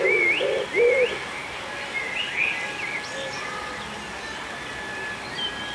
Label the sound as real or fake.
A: real